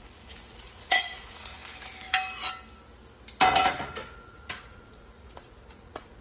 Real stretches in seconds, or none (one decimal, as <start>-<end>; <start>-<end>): 1.6-3.5